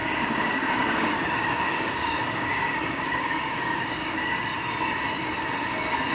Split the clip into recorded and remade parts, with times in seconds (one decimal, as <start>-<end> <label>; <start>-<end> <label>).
0.0-4.5 remade; 4.5-6.1 recorded